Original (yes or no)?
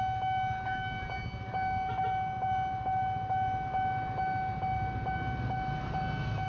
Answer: yes